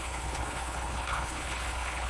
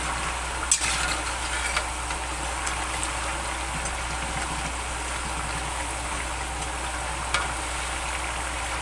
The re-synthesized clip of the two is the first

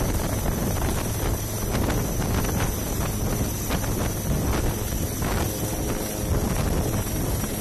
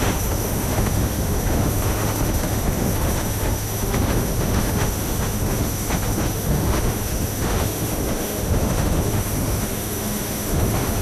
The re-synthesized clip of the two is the second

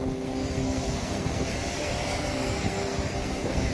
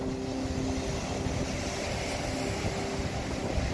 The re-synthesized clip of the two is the first